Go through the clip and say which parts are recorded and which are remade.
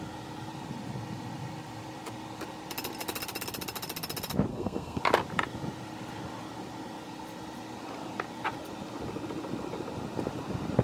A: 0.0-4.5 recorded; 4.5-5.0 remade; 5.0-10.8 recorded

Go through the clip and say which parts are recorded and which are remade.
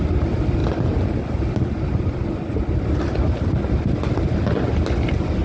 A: 0.0-5.4 recorded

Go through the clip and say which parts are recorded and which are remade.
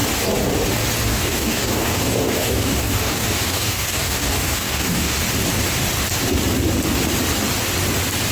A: 0.0-1.1 recorded; 1.1-5.2 remade; 5.2-8.3 recorded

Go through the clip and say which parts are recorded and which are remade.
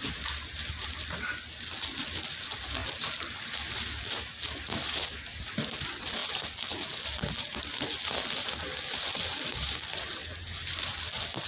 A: 0.0-11.5 recorded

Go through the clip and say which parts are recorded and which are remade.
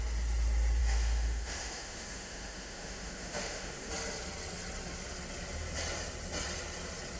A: 0.0-0.8 recorded; 0.8-3.9 remade; 3.9-7.2 recorded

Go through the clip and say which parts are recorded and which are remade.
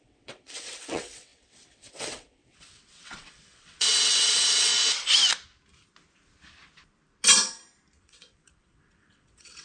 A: 0.0-4.7 remade; 4.7-8.0 recorded; 8.0-9.6 remade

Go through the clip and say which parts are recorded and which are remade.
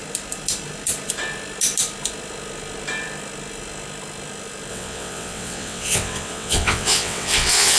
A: 0.0-4.7 recorded; 4.7-7.8 remade